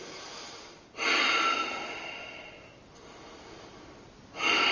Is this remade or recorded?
recorded